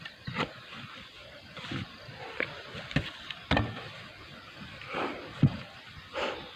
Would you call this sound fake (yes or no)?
yes